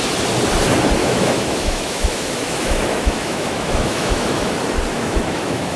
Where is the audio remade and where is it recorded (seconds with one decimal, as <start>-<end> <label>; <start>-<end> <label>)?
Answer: 0.0-1.0 recorded; 1.0-4.5 remade; 4.5-4.9 recorded; 4.9-5.8 remade